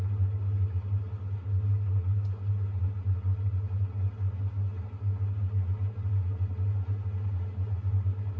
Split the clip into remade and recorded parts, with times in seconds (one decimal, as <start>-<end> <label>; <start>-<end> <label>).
0.0-8.4 recorded